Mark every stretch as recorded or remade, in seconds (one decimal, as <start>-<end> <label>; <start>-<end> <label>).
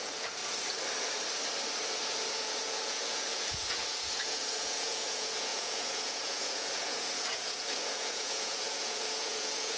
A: 0.0-0.4 remade; 0.4-2.3 recorded; 2.3-9.8 remade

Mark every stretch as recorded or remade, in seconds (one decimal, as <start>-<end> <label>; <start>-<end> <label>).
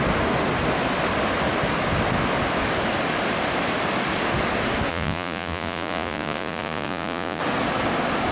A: 0.0-4.9 recorded; 4.9-7.4 remade; 7.4-8.3 recorded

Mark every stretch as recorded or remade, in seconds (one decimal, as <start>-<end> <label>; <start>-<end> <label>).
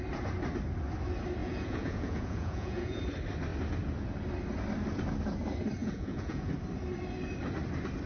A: 0.0-1.4 recorded; 1.4-3.0 remade; 3.0-5.8 recorded; 5.8-6.5 remade; 6.5-8.1 recorded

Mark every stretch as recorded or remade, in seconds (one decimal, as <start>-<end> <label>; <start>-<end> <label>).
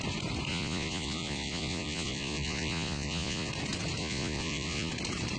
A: 0.0-0.5 recorded; 0.5-3.5 remade; 3.5-4.0 recorded; 4.0-4.9 remade; 4.9-5.4 recorded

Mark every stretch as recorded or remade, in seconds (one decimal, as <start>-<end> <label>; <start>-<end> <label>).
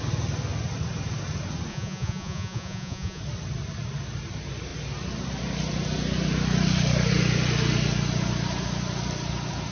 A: 0.0-1.7 recorded; 1.7-3.2 remade; 3.2-9.7 recorded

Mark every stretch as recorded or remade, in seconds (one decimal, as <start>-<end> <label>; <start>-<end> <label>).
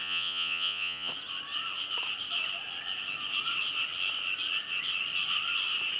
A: 0.0-1.1 remade; 1.1-6.0 recorded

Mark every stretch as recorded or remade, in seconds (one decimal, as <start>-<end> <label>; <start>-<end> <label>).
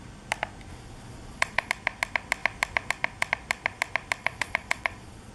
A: 0.0-0.7 recorded; 0.7-1.7 remade; 1.7-4.2 recorded; 4.2-5.3 remade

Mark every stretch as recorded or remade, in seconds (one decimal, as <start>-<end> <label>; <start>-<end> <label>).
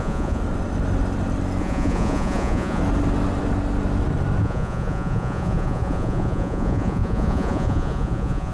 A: 0.0-0.4 remade; 0.4-1.6 recorded; 1.6-2.8 remade; 2.8-4.4 recorded; 4.4-8.5 remade